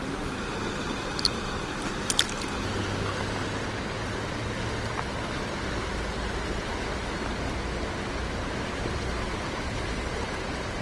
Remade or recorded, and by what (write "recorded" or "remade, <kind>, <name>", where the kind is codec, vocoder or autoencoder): recorded